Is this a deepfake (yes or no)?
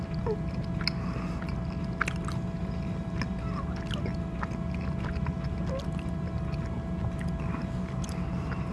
no